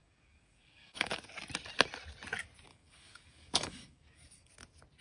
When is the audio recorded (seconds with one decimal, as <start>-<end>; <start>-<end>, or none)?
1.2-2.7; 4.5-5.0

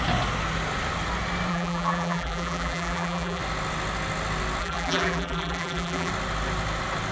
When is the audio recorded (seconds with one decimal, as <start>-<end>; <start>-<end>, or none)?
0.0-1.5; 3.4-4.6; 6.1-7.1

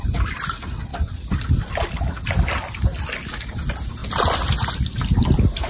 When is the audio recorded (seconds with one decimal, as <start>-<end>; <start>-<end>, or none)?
0.0-0.9; 1.6-4.0; 5.1-5.7

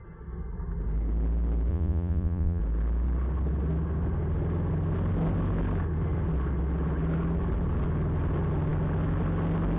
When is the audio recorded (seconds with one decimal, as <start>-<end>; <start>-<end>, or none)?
0.0-1.7; 2.6-9.8

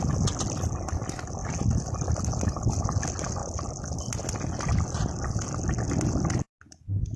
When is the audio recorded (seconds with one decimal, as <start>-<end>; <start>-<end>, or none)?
0.0-7.2

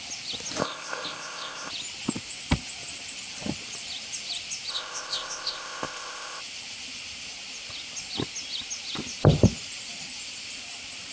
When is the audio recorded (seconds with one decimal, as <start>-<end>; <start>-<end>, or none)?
0.0-0.6; 1.7-4.7; 6.4-11.1

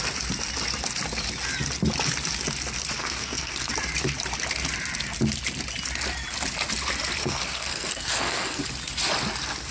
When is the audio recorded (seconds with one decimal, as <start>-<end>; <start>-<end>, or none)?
0.0-3.0; 3.7-7.2; 8.6-9.7